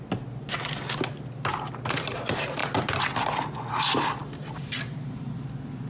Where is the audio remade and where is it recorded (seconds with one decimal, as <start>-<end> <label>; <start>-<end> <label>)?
0.0-5.9 recorded